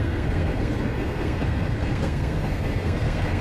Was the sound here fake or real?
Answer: fake